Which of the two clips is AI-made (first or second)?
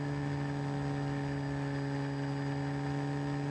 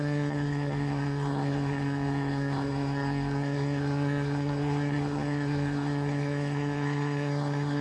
second